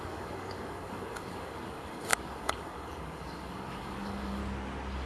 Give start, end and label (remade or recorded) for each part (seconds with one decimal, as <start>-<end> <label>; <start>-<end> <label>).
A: 0.0-4.4 remade; 4.4-5.1 recorded